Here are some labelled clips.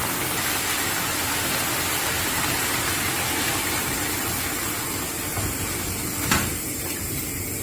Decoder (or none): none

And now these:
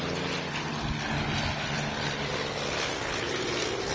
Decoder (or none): none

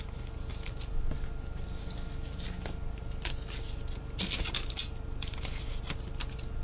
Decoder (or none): none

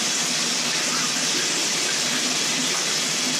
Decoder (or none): none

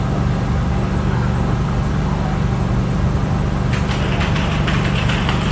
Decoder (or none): none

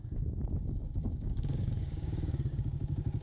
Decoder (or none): codec, DAC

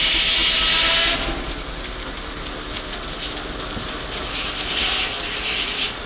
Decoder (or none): none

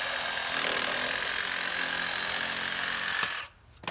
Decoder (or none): none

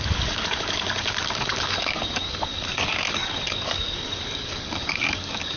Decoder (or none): codec, DAC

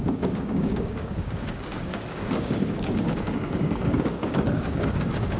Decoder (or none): codec, DAC